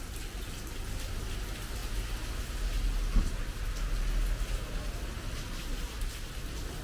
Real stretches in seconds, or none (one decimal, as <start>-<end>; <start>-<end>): 0.0-6.8